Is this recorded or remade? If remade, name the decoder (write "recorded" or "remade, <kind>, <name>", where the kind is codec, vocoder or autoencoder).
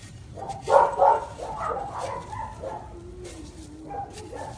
recorded